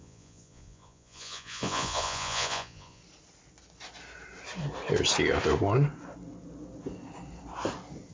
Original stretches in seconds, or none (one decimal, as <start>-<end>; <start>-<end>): 3.0-8.1